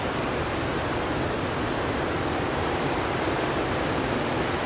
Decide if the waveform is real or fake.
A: real